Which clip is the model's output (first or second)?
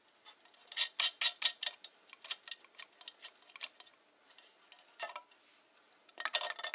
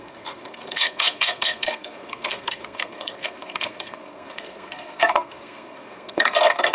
second